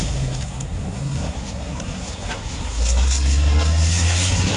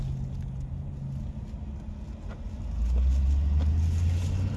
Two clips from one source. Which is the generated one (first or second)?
first